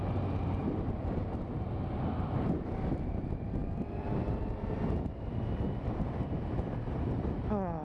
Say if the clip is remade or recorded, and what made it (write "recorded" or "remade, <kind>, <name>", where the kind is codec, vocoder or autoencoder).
remade, vocoder, BigVGAN v2